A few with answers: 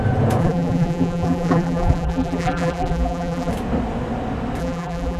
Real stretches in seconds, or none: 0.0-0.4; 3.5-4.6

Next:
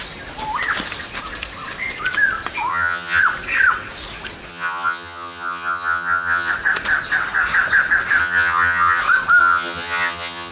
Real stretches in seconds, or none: 0.0-2.7; 3.2-4.5; 6.5-8.2; 9.0-9.4

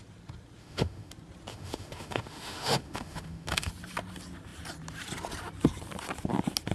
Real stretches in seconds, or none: 0.0-0.6; 1.1-1.5; 3.7-6.7